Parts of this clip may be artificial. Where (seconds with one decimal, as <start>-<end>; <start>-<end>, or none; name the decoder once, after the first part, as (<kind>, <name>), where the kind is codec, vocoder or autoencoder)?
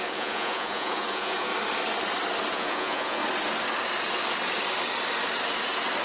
0.0-1.5 (vocoder, Vocos); 2.5-3.2